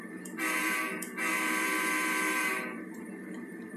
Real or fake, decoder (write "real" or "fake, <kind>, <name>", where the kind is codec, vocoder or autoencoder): fake, vocoder, BigVGAN v2